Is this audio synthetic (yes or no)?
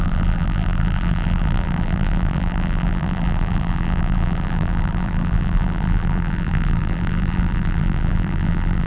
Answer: yes